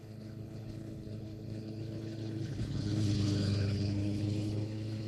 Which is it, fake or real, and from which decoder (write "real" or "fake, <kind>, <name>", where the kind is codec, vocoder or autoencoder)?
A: fake, codec, HILCodec